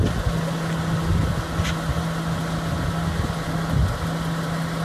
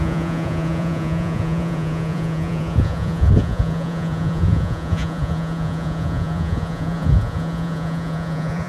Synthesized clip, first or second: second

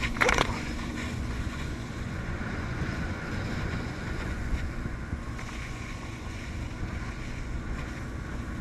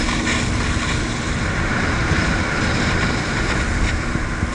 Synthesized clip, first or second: first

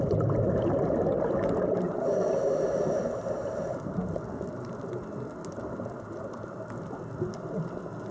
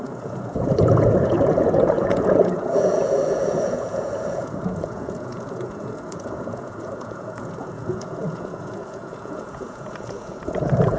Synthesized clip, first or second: second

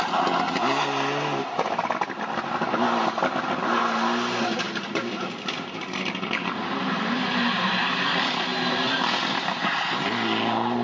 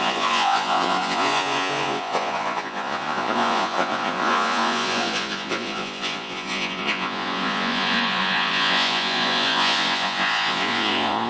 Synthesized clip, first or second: second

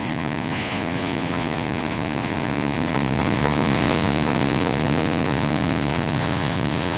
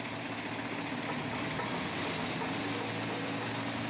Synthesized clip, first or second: first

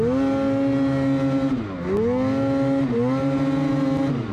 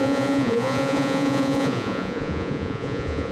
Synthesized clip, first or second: second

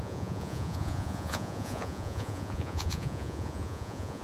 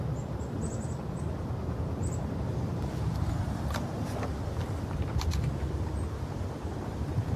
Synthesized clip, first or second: first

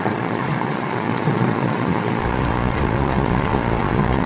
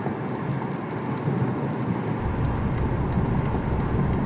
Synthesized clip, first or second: first